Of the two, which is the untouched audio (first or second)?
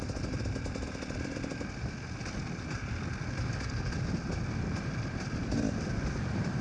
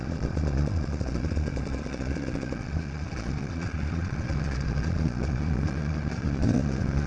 first